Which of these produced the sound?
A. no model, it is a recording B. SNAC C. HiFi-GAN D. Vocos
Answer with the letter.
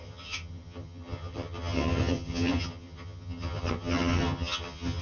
C